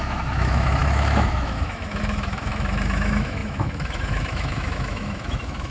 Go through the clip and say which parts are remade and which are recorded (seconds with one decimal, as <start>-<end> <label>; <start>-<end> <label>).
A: 0.0-5.7 remade